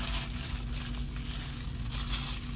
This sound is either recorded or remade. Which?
recorded